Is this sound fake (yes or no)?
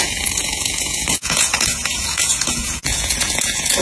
yes